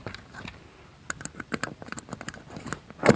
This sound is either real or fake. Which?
fake